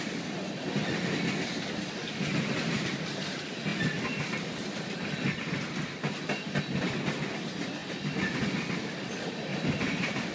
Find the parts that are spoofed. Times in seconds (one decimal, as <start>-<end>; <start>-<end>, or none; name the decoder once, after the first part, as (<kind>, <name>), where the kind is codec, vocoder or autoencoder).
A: 9.5-10.3 (vocoder, BigVGAN v2)